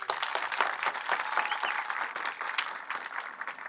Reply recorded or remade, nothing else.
recorded